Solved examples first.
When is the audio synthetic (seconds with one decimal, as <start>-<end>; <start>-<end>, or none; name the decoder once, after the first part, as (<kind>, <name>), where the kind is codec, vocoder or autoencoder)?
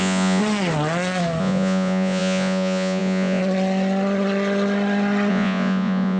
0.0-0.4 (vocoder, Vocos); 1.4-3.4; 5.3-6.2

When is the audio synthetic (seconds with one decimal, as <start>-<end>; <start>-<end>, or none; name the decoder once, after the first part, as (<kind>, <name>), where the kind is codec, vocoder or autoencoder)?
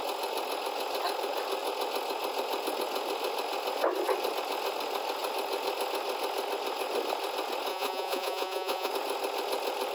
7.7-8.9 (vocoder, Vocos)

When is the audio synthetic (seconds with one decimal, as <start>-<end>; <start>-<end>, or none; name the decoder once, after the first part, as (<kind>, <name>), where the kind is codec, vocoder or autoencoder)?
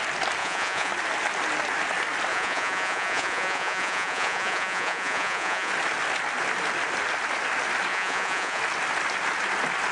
0.4-0.9 (vocoder, Vocos); 2.3-5.7; 7.9-8.6